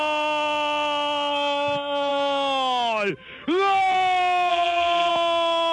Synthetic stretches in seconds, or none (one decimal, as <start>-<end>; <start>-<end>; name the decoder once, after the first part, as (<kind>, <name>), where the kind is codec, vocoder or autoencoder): 4.5-5.1 (vocoder, BigVGAN v2)